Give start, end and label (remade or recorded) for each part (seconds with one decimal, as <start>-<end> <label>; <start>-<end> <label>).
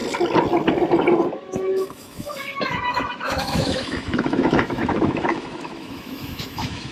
0.0-1.3 recorded; 1.3-6.9 remade